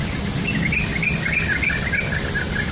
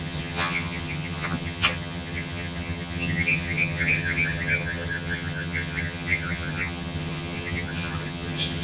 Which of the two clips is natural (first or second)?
first